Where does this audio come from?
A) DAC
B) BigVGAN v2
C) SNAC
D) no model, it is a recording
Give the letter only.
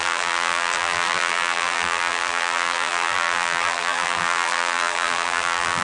B